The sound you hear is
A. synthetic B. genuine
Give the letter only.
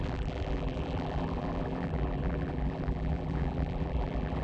A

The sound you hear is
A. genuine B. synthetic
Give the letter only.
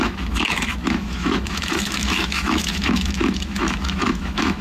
B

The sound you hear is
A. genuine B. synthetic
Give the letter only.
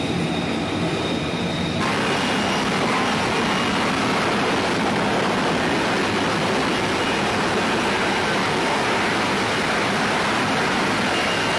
A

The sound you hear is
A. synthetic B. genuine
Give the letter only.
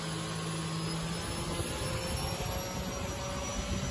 B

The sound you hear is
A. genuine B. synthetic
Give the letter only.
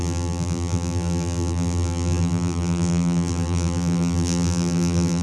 B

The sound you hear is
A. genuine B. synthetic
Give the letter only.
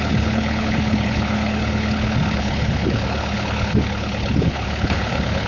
B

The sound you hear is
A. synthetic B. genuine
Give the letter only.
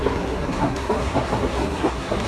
A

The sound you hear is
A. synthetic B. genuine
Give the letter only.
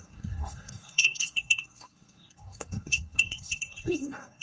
A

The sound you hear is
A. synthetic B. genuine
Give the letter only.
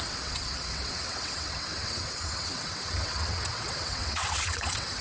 A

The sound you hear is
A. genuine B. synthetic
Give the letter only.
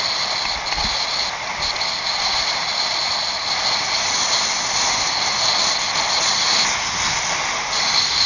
A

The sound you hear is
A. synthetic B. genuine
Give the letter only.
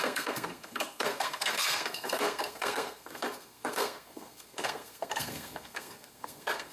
A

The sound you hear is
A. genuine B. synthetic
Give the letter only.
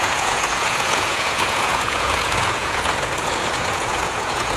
B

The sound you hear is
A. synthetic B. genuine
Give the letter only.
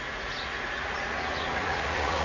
A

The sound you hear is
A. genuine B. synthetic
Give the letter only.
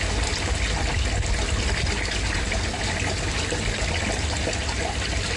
A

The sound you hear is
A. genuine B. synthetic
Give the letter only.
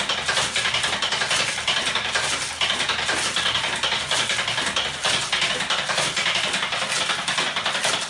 A